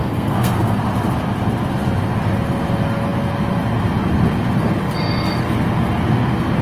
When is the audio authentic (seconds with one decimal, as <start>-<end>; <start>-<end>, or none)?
0.8-6.6